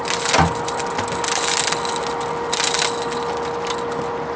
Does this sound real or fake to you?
real